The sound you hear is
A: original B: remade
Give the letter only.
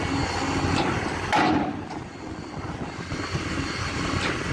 A